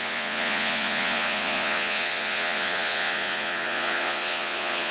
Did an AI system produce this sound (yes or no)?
yes